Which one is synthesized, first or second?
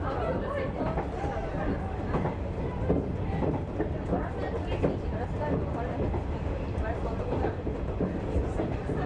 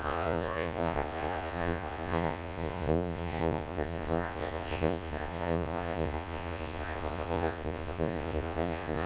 second